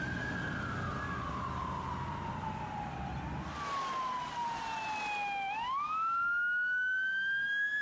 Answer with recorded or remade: recorded